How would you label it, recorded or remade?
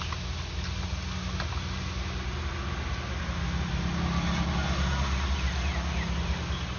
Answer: recorded